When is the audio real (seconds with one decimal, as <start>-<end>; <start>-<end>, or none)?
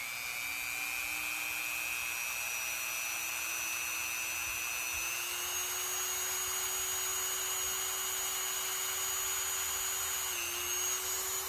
0.0-11.5